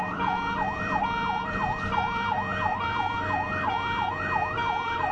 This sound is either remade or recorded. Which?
remade